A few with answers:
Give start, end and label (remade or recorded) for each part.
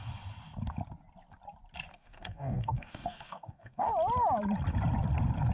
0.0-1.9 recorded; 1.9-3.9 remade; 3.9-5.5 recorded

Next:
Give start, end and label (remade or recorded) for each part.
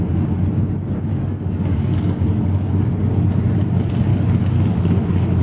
0.0-1.1 recorded; 1.1-2.7 remade; 2.7-4.1 recorded; 4.1-5.4 remade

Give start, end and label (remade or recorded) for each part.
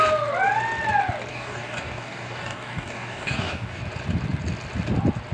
0.0-1.3 recorded; 1.3-3.8 remade; 3.8-5.3 recorded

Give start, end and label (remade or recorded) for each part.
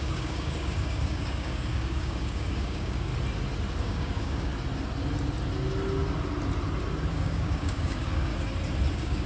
0.0-3.1 remade; 3.1-3.8 recorded; 3.8-4.5 remade; 4.5-7.1 recorded; 7.1-8.3 remade; 8.3-8.9 recorded; 8.9-9.3 remade